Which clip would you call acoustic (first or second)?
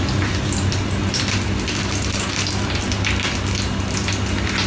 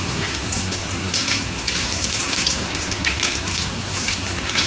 first